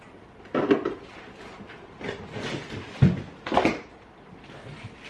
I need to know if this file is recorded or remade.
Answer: recorded